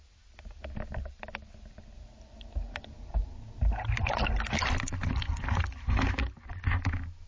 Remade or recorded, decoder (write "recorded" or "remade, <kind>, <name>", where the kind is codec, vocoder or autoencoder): recorded